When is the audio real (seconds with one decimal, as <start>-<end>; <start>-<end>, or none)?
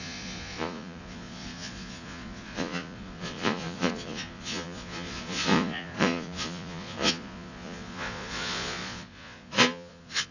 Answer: none